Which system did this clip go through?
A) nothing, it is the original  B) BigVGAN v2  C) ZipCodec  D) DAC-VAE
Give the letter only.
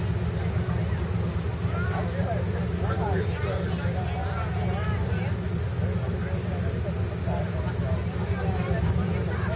A